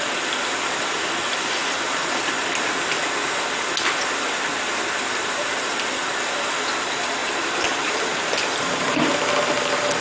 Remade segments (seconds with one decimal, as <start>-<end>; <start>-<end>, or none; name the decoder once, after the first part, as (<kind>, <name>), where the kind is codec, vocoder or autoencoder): 7.2-9.1 (vocoder, BigVGAN v2)

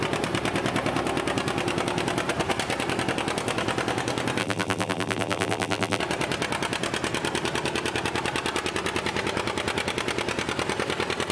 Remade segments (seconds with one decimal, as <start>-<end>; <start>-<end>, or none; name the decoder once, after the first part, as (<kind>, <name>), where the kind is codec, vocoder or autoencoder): 4.4-6.0 (vocoder, BigVGAN v2)

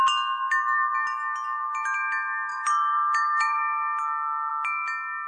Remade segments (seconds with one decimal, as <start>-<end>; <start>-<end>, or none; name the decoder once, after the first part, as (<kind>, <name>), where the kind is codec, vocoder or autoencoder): 2.5-3.6 (vocoder, BigVGAN v2)

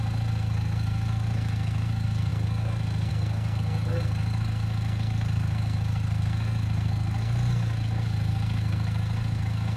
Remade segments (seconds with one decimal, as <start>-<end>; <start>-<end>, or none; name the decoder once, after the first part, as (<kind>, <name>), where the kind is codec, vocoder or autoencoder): 0.0-9.8 (codec, SNAC)